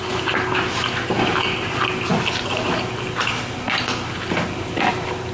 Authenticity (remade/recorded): recorded